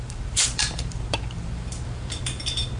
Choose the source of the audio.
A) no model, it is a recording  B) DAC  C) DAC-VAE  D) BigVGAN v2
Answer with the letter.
D